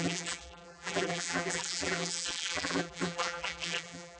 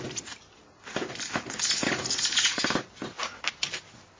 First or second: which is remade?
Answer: first